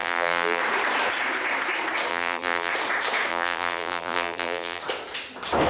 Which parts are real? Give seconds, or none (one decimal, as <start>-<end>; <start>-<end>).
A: 0.6-2.1; 2.7-3.3; 4.8-5.7